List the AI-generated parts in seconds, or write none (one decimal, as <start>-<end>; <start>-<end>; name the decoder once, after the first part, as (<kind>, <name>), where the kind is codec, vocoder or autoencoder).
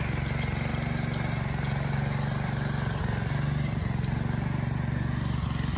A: none